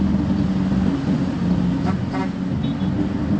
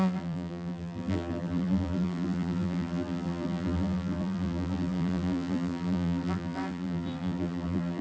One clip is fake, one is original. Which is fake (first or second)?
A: second